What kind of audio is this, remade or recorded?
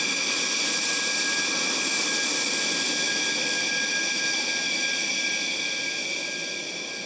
recorded